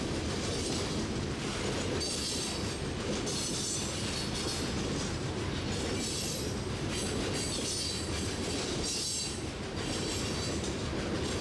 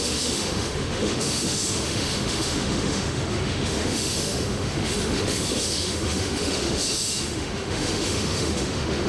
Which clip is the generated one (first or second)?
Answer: second